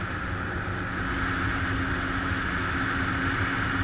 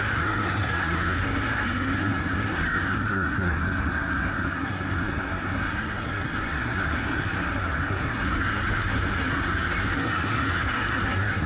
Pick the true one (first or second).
first